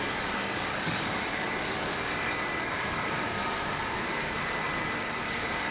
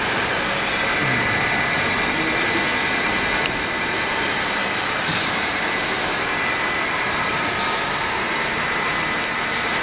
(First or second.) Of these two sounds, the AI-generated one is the first